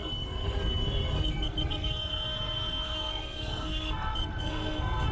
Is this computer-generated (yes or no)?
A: yes